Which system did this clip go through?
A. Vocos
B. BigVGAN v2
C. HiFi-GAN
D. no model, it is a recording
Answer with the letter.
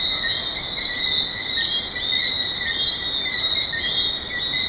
D